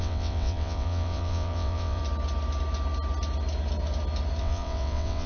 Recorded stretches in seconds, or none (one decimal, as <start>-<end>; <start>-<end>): 2.0-4.4